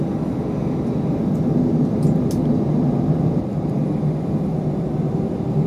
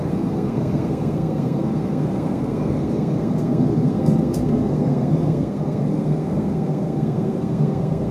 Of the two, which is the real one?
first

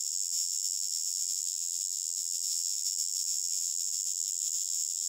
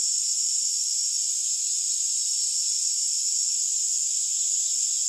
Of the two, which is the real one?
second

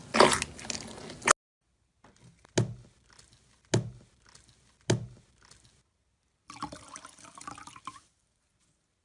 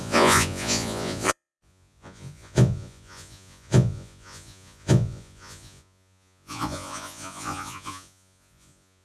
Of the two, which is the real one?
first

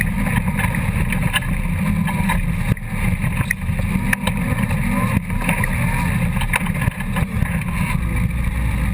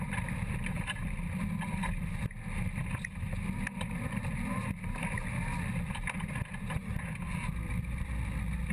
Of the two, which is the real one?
first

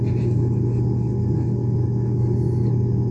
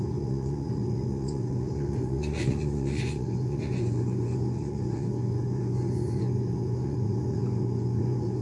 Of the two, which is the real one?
first